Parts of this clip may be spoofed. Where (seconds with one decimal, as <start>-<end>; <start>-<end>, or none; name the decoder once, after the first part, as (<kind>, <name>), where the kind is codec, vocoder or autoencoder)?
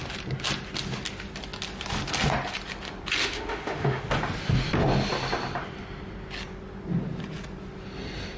3.2-4.1 (autoencoder, DAC-VAE)